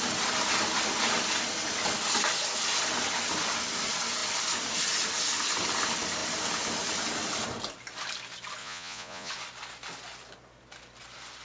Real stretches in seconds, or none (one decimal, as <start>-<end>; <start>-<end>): 0.0-8.6; 9.3-11.4